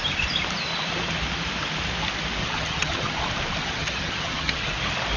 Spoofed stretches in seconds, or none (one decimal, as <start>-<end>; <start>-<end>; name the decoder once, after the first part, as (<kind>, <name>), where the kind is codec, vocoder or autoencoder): 2.4-3.2 (vocoder, HiFi-GAN); 3.6-4.7